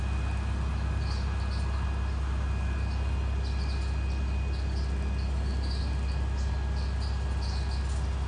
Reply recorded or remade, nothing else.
recorded